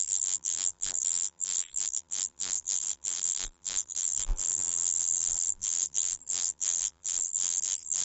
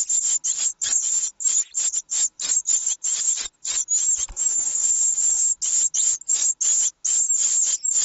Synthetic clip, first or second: first